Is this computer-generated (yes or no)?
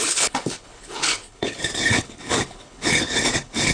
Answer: yes